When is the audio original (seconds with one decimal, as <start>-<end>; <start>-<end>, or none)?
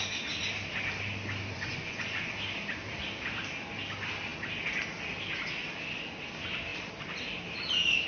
0.0-1.5; 2.3-8.1